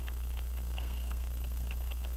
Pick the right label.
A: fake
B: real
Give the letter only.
A